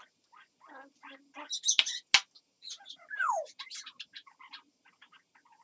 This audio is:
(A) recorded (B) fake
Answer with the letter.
A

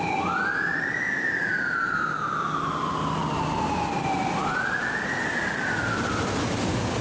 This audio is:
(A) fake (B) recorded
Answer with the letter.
B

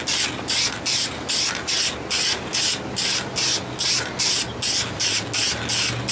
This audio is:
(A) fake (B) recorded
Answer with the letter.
B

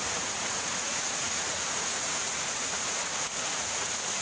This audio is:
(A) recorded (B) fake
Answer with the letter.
B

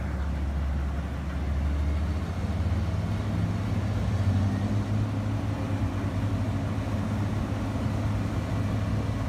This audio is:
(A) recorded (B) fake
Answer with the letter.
A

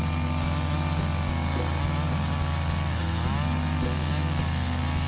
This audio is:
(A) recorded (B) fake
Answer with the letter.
A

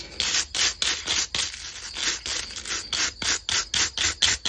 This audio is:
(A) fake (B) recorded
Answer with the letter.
B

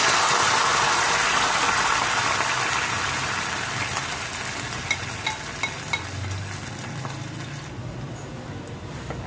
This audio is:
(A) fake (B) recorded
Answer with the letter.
B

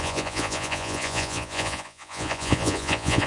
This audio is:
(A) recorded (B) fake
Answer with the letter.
B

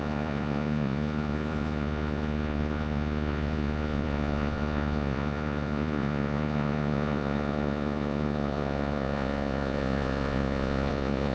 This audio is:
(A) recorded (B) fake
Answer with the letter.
B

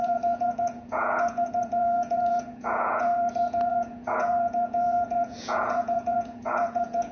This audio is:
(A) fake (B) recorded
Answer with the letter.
A